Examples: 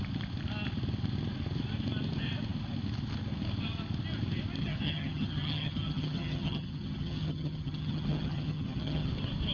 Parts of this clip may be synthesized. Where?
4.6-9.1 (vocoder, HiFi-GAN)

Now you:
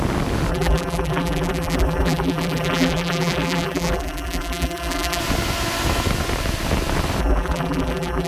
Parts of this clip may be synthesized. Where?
0.5-5.2 (vocoder, BigVGAN v2); 7.2-8.3

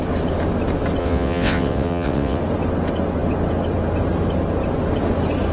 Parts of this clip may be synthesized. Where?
1.0-2.4 (vocoder, WaveNeXt)

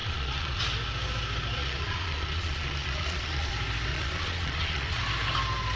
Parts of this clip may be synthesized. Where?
0.0-0.6 (vocoder, Vocos); 1.6-3.5; 3.9-5.0

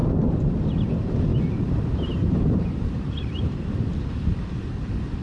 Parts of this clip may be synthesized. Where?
1.3-4.4 (vocoder, BigVGAN v2)

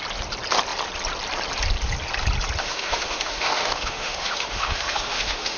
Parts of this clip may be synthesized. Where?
2.6-5.6 (autoencoder, DAC-VAE)

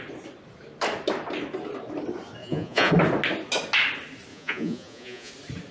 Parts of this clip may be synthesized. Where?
2.4-2.9 (vocoder, Vocos); 4.3-5.3